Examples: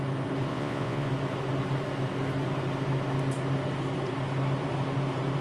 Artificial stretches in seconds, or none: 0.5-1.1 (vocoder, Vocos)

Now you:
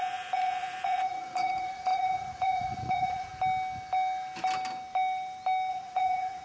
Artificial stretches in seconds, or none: 0.0-3.3 (vocoder, Vocos); 5.7-6.4

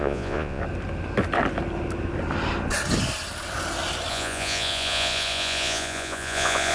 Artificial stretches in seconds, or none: 0.0-0.6 (vocoder, Vocos); 4.1-6.7

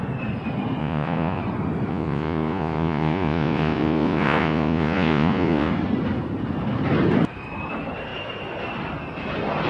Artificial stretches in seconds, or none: 0.8-1.4 (vocoder, Vocos); 1.9-5.7

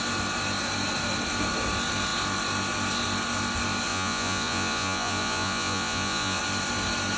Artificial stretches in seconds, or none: 3.9-6.4 (vocoder, Vocos)

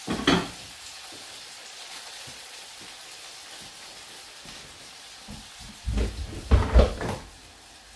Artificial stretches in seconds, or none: 1.6-2.7 (vocoder, Vocos)

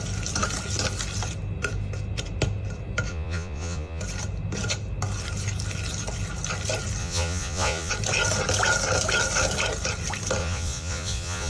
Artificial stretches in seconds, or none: 3.1-4.0 (vocoder, Vocos); 7.0-7.9; 10.4-11.5

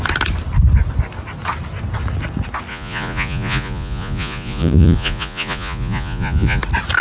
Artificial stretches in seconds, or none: 2.7-6.6 (vocoder, Vocos)